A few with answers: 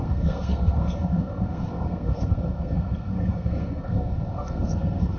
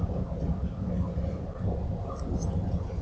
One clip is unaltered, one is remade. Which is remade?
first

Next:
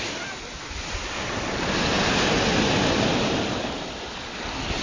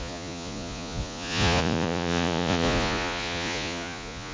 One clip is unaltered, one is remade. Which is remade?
second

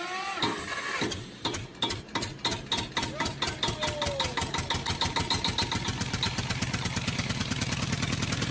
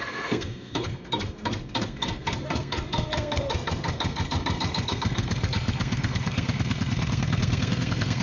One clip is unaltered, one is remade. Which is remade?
second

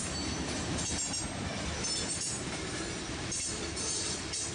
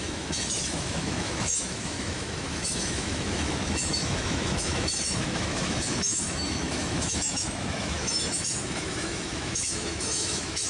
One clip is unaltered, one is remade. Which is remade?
second